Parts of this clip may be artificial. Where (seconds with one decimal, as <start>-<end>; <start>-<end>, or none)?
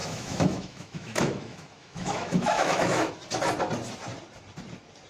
0.0-3.1